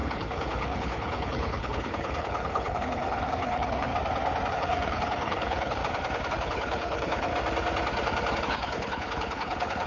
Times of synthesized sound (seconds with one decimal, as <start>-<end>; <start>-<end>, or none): 0.0-3.9; 4.5-5.8; 6.3-7.3; 8.4-9.9